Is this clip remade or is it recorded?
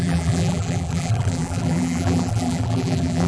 remade